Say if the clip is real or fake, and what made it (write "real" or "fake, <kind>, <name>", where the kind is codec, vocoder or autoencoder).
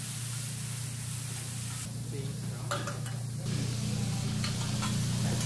real